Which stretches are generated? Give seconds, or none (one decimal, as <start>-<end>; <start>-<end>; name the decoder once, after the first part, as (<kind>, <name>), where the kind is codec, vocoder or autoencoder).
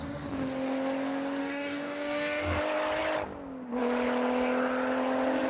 1.4-2.6 (codec, DAC)